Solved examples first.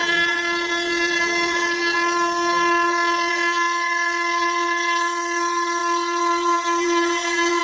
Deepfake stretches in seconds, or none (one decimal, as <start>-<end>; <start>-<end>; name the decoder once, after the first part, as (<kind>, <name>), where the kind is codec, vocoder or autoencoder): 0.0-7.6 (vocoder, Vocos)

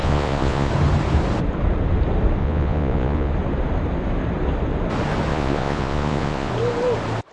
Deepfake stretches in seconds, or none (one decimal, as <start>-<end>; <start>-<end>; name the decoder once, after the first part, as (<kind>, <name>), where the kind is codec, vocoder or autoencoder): 0.0-0.7 (vocoder, Vocos); 2.4-3.3; 5.3-6.5

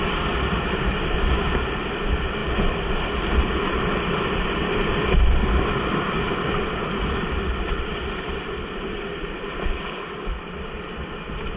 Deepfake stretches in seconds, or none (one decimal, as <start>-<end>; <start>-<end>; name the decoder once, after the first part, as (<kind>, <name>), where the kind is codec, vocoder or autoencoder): none